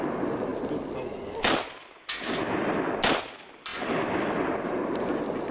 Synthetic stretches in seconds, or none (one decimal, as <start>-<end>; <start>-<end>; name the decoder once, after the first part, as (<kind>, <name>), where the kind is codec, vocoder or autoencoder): none